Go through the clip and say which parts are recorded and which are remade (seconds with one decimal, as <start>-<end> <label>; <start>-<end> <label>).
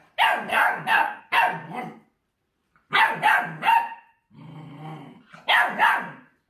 0.0-0.5 recorded; 0.5-1.2 remade; 1.2-6.5 recorded